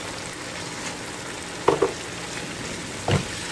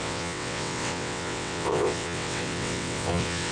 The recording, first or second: first